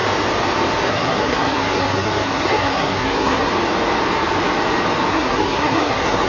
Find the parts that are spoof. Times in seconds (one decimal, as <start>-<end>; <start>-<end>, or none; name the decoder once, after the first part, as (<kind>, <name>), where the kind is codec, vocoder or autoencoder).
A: 0.9-3.5 (codec, SNAC); 5.1-6.3